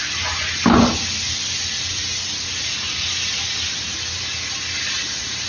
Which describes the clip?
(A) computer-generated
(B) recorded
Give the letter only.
B